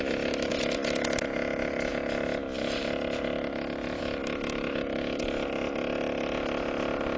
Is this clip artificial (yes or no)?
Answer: no